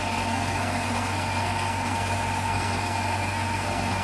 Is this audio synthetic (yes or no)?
yes